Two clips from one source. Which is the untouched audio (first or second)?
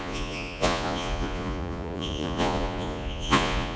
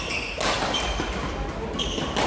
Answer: second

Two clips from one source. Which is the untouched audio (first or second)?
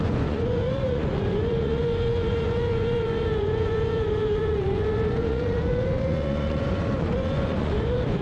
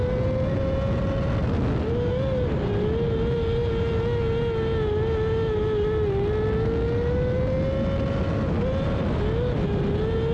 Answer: second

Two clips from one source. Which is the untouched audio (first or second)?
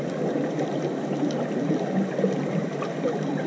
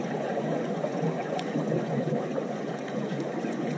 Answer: first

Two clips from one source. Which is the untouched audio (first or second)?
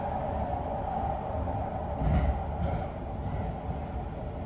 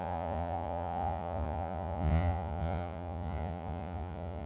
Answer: first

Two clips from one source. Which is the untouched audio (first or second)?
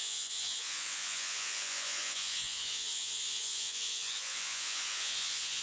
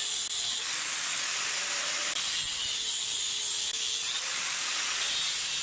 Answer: second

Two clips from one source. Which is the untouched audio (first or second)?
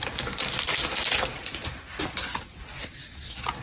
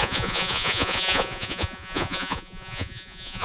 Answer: first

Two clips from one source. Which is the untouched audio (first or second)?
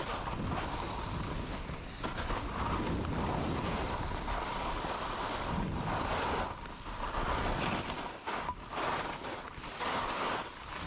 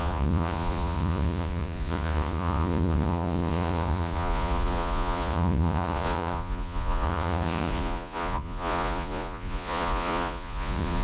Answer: first